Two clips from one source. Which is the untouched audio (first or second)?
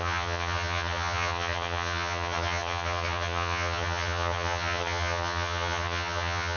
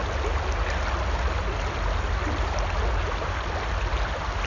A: second